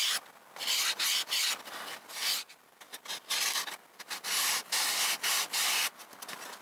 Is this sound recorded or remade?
recorded